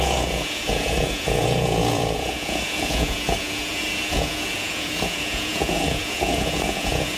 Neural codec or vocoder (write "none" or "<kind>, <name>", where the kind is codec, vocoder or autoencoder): vocoder, Vocos